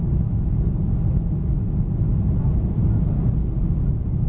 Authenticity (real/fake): real